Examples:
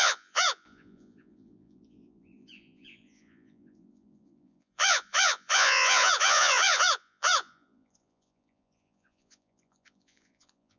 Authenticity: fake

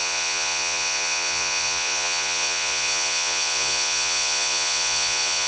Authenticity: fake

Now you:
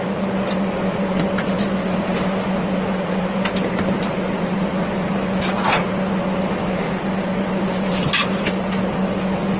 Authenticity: real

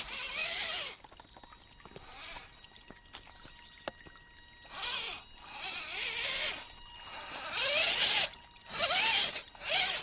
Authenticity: real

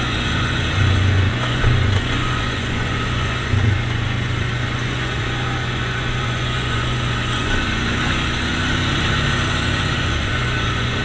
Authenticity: fake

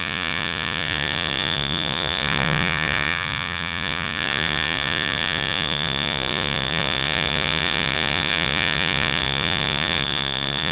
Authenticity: fake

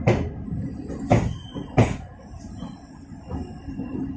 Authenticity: real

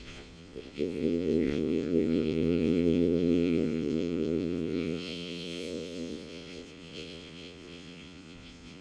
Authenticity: fake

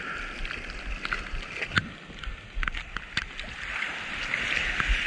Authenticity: real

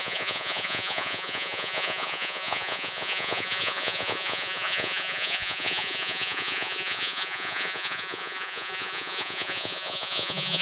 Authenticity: fake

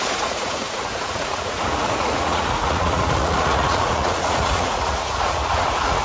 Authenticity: fake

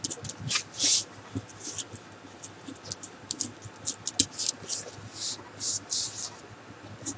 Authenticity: real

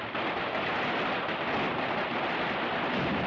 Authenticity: real